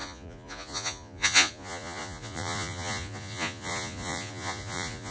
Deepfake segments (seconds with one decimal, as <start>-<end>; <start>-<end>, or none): 0.0-5.1